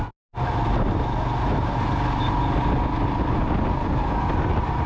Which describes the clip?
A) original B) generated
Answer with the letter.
A